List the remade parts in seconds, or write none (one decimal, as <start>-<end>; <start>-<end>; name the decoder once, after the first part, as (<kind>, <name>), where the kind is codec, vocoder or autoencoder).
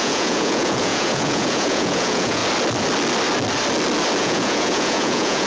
0.0-2.4 (vocoder, Vocos); 4.2-5.5